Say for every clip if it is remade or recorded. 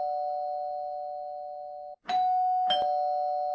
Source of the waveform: recorded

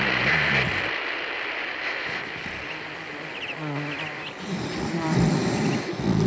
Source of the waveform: recorded